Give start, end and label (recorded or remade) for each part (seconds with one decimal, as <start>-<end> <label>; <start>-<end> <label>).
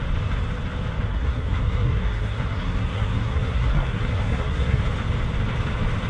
0.0-1.1 recorded; 1.1-4.8 remade; 4.8-6.1 recorded